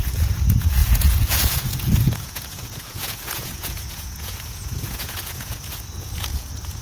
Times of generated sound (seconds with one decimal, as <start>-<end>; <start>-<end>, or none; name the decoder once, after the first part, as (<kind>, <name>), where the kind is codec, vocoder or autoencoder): 0.0-6.8 (vocoder, Vocos)